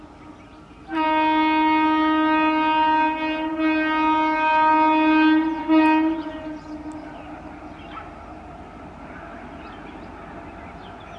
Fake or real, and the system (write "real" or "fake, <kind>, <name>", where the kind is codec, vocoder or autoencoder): real